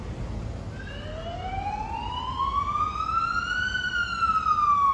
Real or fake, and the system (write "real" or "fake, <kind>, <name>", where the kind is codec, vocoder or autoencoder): real